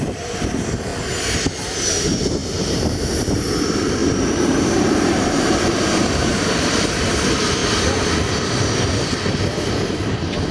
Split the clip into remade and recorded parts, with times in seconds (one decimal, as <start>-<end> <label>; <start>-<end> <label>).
0.0-0.9 remade; 0.9-1.9 recorded; 1.9-4.0 remade; 4.0-4.8 recorded; 4.8-7.6 remade; 7.6-9.3 recorded; 9.3-10.5 remade

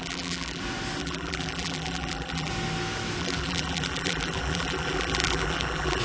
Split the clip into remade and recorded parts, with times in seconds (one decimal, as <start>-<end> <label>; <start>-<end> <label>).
0.0-0.6 remade; 0.6-1.0 recorded; 1.0-2.5 remade; 2.5-3.2 recorded; 3.2-6.0 remade

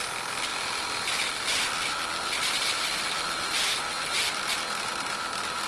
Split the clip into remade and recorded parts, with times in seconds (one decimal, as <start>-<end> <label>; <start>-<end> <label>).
0.0-0.5 recorded; 0.5-3.9 remade; 3.9-5.7 recorded

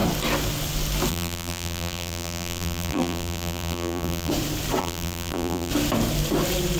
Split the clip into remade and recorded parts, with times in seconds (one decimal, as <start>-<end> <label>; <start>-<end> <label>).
0.0-1.1 recorded; 1.1-4.3 remade; 4.3-4.8 recorded; 4.8-5.7 remade; 5.7-6.8 recorded